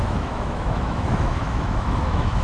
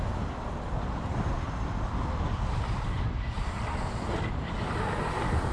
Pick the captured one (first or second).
second